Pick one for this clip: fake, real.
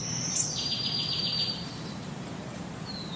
fake